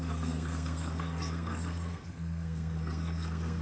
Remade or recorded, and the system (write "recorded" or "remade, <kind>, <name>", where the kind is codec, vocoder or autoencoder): remade, codec, SNAC